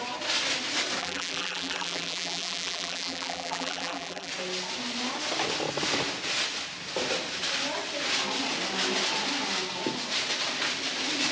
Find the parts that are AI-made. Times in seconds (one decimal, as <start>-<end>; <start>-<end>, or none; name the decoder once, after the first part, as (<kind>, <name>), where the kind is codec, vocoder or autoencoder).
1.0-4.3 (vocoder, BigVGAN v2)